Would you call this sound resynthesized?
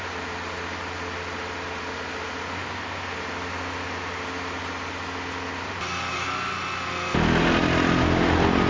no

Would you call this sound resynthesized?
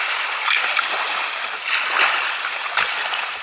no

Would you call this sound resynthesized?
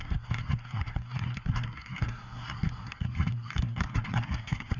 yes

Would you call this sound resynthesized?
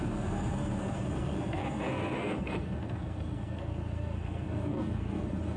yes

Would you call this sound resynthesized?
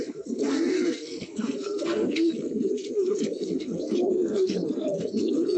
yes